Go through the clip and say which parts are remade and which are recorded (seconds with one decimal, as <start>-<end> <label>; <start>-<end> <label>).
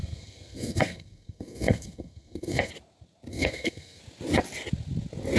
0.0-2.7 remade; 2.7-3.3 recorded; 3.3-4.0 remade; 4.0-5.4 recorded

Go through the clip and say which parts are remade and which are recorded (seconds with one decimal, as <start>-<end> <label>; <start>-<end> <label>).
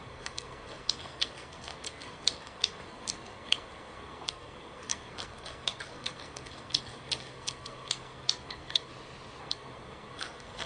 0.0-8.9 remade; 8.9-9.4 recorded; 9.4-10.7 remade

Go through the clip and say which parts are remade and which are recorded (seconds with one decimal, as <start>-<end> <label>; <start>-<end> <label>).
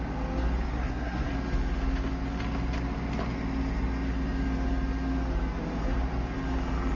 0.0-0.7 recorded; 0.7-1.3 remade; 1.3-7.0 recorded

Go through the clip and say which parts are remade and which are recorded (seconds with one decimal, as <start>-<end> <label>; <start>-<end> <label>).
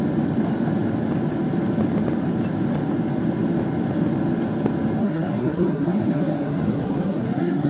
0.0-5.0 recorded; 5.0-7.7 remade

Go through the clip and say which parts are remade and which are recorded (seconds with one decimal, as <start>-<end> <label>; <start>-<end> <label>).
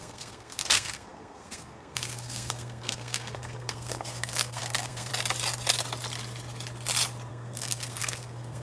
0.0-5.1 remade; 5.1-7.3 recorded; 7.3-8.6 remade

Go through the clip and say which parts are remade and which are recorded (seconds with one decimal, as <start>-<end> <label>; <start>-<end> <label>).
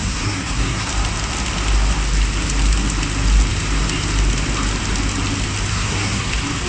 0.0-0.9 remade; 0.9-5.7 recorded; 5.7-6.3 remade; 6.3-6.7 recorded